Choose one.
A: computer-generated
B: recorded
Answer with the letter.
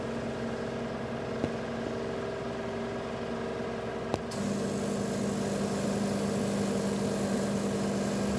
B